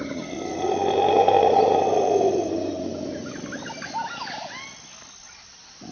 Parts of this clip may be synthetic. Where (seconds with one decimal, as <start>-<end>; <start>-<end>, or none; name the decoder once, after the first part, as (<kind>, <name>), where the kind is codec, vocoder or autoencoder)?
0.0-0.8 (vocoder, BigVGAN v2); 1.6-2.9; 5.0-5.9